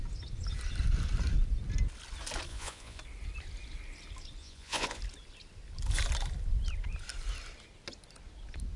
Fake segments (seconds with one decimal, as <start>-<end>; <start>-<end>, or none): 2.5-3.0; 4.4-5.0